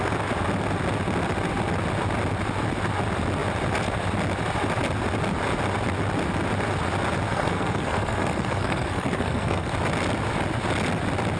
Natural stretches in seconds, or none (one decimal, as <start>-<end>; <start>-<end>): 0.0-7.3; 9.7-11.4